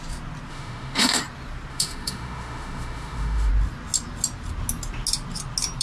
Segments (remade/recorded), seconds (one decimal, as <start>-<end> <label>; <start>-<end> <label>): 0.0-0.5 recorded; 0.5-1.2 remade; 1.2-1.7 recorded; 1.7-3.5 remade; 3.5-5.8 recorded